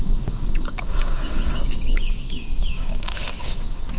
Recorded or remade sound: remade